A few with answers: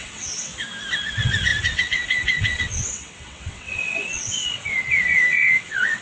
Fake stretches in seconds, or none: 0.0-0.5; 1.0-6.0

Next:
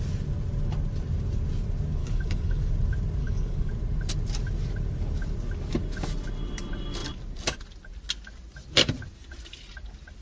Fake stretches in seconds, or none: 2.0-2.7; 3.2-3.7

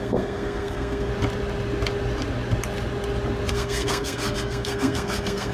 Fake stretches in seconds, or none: 0.0-1.1; 3.5-5.5

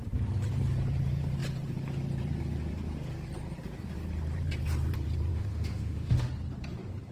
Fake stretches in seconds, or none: 5.3-6.3

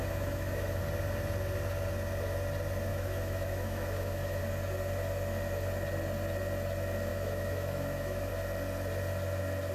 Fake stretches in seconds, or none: 0.0-0.8; 2.9-4.4; 7.1-8.3

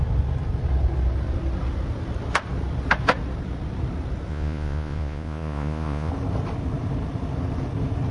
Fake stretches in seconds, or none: 4.3-6.1

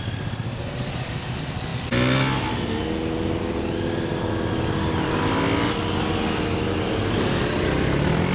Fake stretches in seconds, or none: none

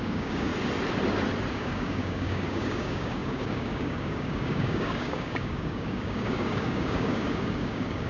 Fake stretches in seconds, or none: 0.0-0.5; 1.5-8.1